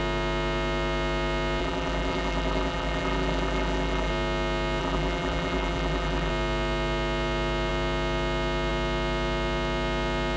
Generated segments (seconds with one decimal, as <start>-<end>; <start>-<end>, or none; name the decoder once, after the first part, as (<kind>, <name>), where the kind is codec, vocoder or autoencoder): 1.6-4.1 (vocoder, BigVGAN v2); 4.8-6.3